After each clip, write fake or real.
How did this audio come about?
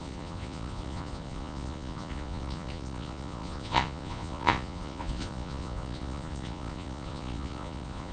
fake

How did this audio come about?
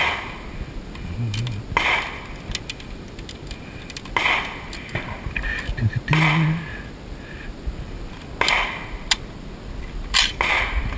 real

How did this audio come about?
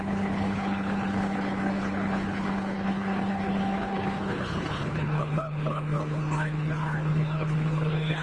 fake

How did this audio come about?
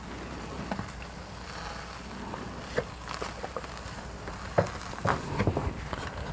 real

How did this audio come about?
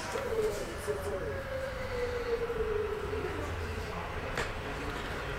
fake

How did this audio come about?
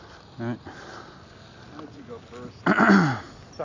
real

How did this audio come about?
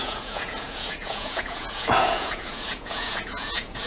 fake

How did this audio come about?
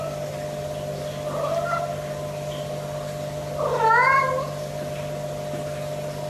real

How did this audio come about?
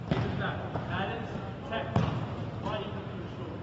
fake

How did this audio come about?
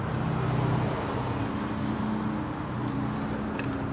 real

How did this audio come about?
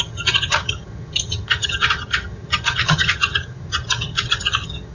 fake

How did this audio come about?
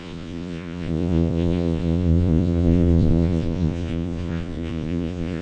fake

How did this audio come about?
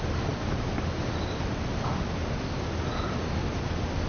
real